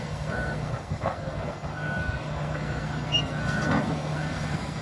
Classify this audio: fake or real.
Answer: fake